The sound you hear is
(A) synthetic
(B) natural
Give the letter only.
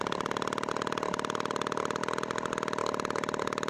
B